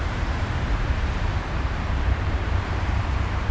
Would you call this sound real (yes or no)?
no